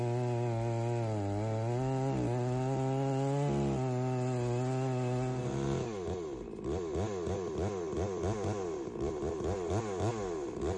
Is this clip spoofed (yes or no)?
no